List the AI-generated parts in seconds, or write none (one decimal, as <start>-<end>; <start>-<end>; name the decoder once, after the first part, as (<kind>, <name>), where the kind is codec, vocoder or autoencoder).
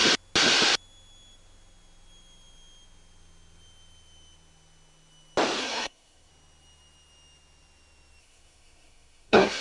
5.6-6.3 (codec, SNAC); 8.2-9.6